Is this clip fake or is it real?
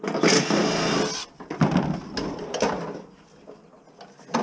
real